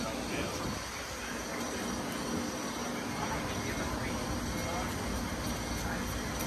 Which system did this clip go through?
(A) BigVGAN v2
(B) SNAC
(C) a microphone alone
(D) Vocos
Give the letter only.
C